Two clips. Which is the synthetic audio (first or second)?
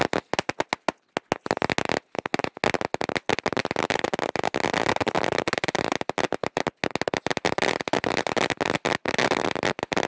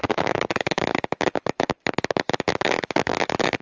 second